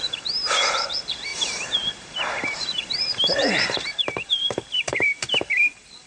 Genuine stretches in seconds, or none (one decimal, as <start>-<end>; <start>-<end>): 0.0-1.3; 3.8-6.1